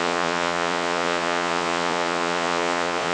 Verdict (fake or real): fake